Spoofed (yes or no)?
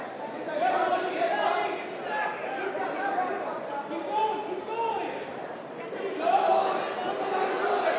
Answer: no